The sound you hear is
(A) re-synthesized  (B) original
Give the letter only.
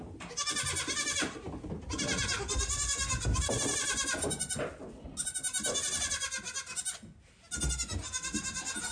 B